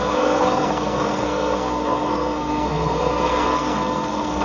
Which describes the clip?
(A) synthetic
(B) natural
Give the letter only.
A